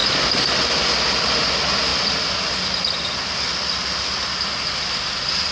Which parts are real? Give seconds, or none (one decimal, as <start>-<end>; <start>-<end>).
0.0-5.5